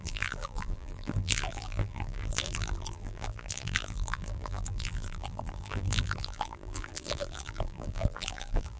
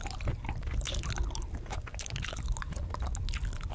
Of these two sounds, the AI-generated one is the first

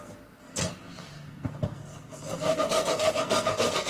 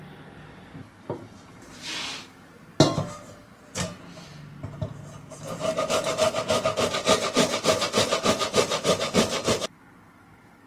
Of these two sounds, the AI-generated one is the first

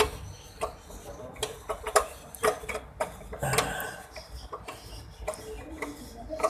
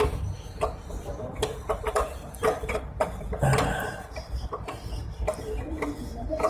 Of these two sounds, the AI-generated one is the second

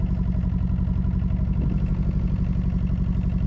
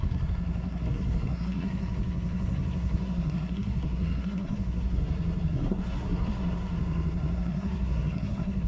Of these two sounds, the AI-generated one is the second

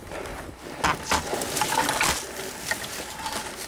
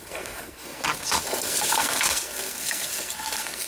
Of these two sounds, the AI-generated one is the second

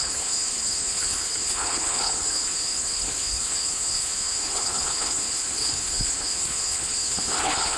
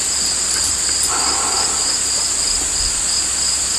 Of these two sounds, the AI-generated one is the first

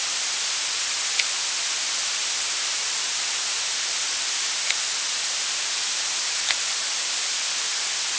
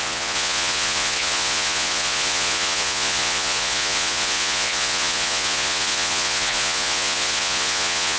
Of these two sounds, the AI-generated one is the second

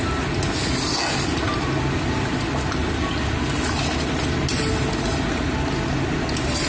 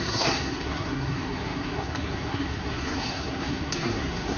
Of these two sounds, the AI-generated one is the second